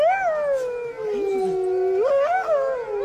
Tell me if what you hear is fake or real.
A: real